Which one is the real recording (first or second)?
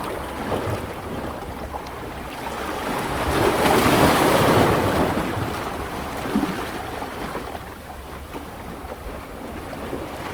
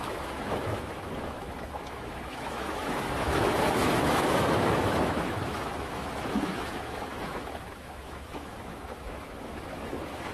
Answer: first